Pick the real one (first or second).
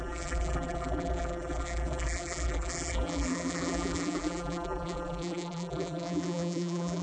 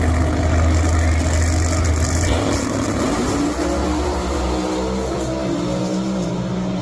second